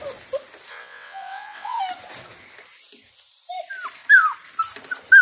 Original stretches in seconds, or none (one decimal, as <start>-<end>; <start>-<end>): 0.0-0.7; 1.8-5.2